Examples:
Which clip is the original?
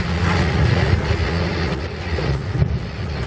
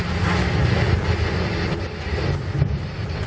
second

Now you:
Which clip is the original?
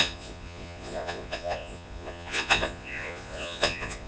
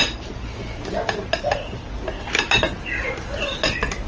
second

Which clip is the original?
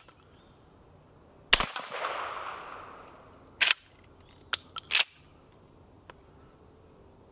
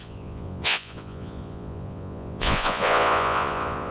first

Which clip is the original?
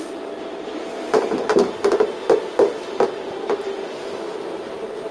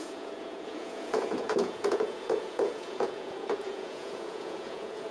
first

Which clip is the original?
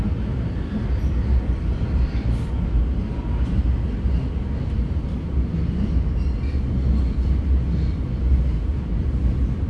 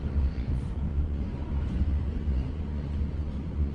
first